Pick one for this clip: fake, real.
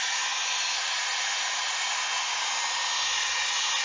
real